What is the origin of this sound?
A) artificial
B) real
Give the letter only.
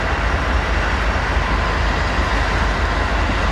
B